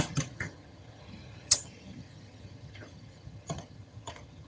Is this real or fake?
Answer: fake